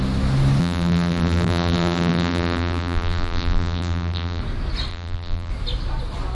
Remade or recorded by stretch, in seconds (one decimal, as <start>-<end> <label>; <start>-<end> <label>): 0.0-0.6 recorded; 0.6-4.4 remade; 4.4-4.9 recorded; 4.9-5.5 remade; 5.5-6.3 recorded